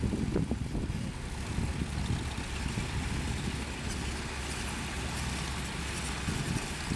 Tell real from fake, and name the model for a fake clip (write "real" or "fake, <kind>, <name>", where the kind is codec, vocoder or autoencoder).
real